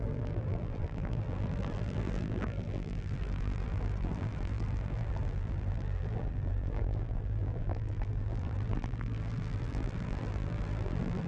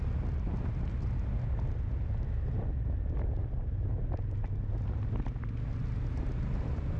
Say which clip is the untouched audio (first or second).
second